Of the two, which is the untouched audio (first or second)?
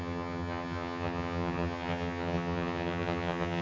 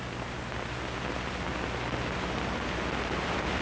second